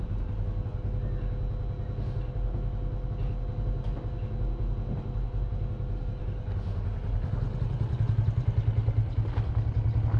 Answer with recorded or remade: recorded